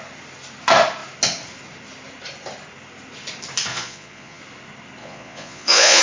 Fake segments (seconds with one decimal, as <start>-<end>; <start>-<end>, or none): 3.7-4.4; 5.0-6.0